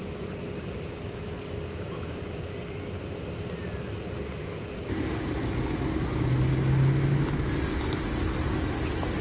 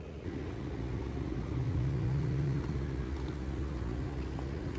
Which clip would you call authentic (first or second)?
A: first